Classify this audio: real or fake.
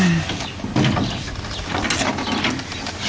real